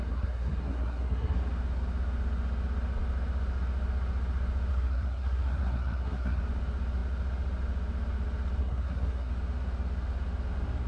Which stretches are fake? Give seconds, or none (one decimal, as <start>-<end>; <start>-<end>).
0.0-1.4; 4.7-6.4; 8.6-9.3